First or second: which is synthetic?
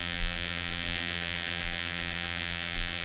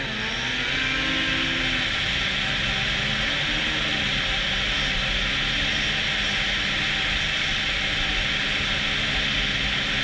first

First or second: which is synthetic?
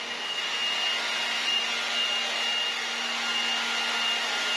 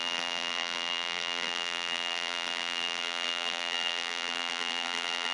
second